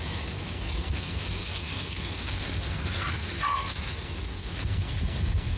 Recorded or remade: remade